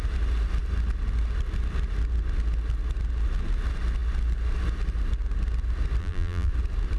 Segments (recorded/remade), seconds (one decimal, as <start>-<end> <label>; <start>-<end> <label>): 0.0-6.0 recorded; 6.0-6.5 remade; 6.5-7.0 recorded